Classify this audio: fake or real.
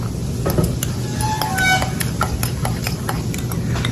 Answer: real